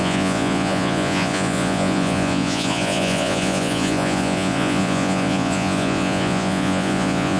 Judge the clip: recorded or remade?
remade